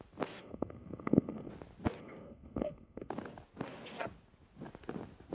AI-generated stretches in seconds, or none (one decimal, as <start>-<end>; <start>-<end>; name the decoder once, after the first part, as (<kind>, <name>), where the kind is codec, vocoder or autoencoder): 0.4-1.5 (codec, SNAC); 2.0-3.1